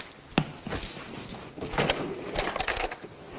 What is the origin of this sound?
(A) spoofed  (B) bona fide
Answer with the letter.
B